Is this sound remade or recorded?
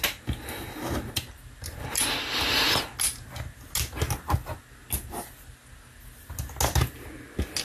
recorded